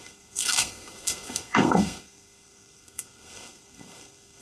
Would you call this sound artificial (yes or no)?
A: yes